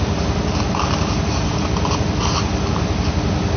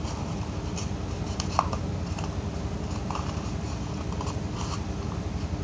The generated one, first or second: second